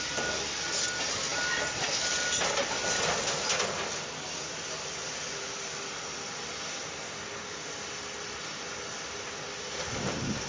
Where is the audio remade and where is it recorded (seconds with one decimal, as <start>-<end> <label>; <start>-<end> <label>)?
0.0-10.5 recorded